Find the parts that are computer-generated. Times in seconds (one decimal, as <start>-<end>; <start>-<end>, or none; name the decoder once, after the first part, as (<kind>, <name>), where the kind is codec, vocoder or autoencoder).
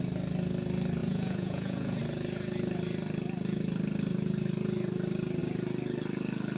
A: 1.0-2.0 (vocoder, Vocos)